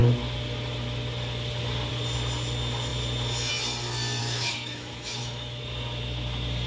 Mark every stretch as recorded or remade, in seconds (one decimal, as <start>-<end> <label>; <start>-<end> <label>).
0.0-4.2 recorded; 4.2-5.6 remade; 5.6-6.7 recorded